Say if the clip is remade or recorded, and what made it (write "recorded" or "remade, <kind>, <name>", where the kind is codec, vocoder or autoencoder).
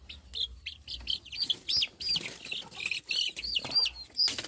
recorded